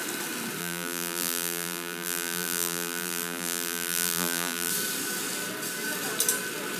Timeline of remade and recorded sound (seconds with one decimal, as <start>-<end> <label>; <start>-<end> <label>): 0.0-0.6 recorded; 0.6-4.7 remade; 4.7-6.8 recorded